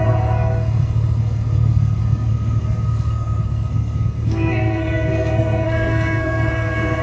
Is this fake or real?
fake